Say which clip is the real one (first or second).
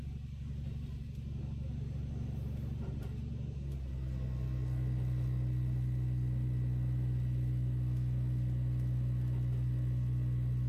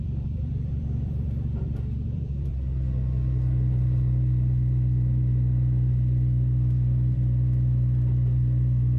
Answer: first